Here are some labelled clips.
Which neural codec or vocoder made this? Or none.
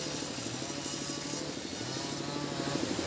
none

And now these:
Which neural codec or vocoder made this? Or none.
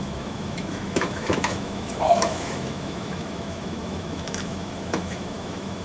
autoencoder, DAC-VAE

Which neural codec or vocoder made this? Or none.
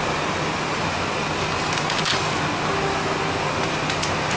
none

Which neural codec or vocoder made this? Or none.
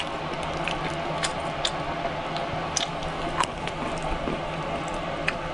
none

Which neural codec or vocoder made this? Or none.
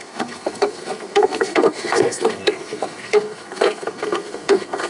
codec, SNAC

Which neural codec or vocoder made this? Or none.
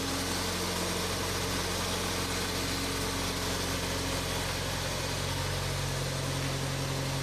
none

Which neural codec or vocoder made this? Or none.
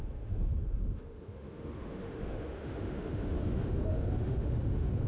autoencoder, DAC-VAE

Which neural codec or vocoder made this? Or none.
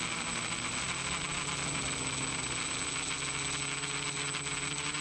none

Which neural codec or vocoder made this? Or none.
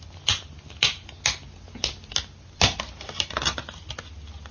none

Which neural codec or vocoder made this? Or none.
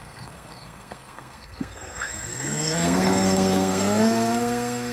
codec, SNAC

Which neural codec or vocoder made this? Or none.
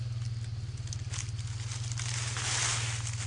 none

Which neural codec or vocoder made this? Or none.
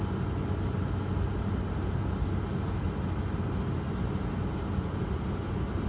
none